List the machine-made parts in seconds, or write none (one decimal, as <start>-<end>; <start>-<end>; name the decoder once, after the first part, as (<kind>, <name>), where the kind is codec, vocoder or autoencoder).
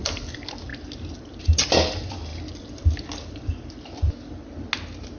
none